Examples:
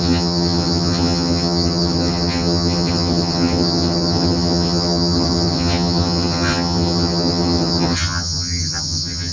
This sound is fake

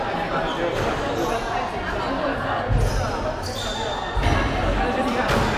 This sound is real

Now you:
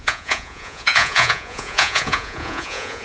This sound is fake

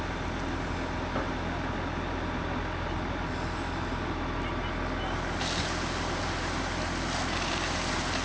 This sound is real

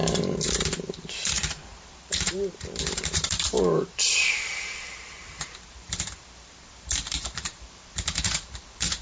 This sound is fake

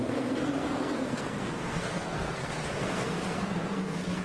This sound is fake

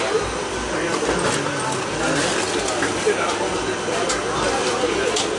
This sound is real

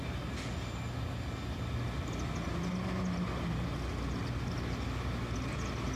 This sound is real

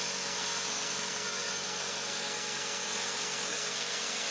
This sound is fake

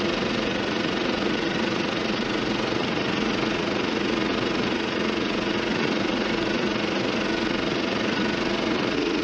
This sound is fake